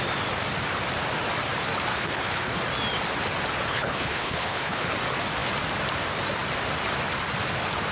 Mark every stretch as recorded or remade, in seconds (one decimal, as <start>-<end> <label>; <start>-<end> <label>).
0.0-1.9 recorded; 1.9-2.6 remade; 2.6-3.7 recorded; 3.7-4.9 remade; 4.9-7.9 recorded